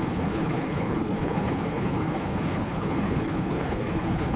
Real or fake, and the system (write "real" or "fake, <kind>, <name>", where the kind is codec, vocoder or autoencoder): fake, codec, HILCodec